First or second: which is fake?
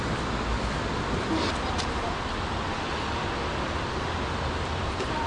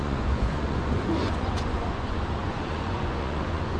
second